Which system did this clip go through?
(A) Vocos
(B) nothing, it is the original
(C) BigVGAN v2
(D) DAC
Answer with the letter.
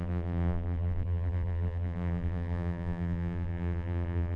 C